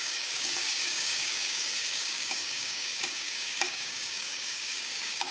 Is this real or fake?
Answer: fake